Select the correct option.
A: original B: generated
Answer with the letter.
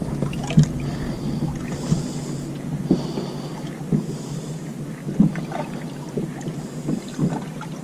A